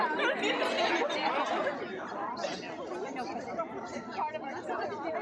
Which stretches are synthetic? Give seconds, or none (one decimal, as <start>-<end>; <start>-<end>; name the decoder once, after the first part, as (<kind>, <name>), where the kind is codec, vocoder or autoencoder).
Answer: none